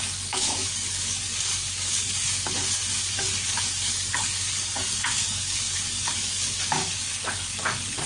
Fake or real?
fake